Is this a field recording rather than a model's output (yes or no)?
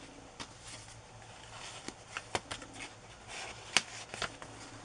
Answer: yes